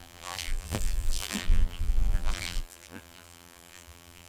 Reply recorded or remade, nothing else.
remade